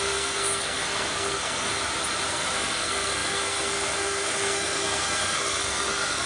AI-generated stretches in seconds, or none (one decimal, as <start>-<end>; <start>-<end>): 0.0-1.7; 2.3-6.3